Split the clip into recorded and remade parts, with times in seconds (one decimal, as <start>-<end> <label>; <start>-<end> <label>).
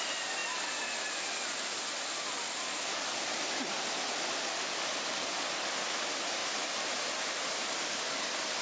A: 0.0-6.4 recorded; 6.4-8.0 remade; 8.0-8.6 recorded